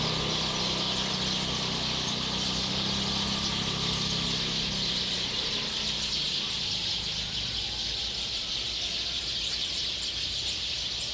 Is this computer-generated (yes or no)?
no